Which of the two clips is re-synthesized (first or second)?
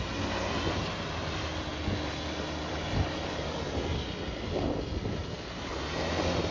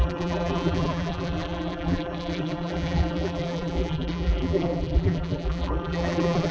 second